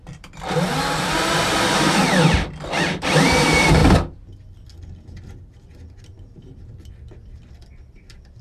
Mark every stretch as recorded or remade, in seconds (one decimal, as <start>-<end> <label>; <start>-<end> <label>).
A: 0.0-3.8 remade; 3.8-6.6 recorded; 6.6-8.4 remade